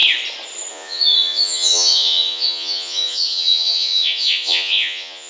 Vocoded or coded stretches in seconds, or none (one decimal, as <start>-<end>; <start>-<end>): 0.7-5.3